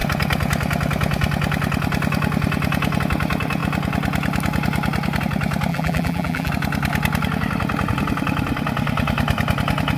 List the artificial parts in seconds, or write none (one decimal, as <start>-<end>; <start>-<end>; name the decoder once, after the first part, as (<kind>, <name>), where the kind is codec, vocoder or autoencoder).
5.7-6.5 (vocoder, BigVGAN v2)